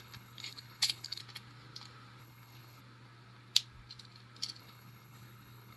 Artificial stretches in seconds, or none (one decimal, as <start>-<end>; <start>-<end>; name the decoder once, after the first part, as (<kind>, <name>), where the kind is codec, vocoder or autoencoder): 0.0-1.2 (codec, HILCodec); 2.2-2.8; 4.6-5.8